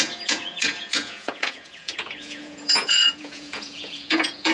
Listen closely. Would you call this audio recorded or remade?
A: remade